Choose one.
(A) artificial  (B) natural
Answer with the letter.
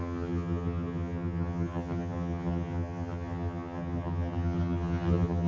A